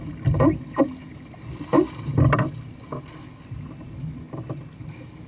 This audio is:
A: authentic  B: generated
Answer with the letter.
A